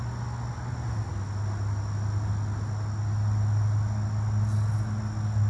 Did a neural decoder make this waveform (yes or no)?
no